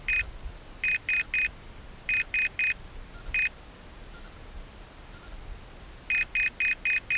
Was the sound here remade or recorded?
recorded